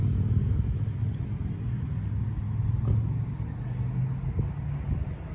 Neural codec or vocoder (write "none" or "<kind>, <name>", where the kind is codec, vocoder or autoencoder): none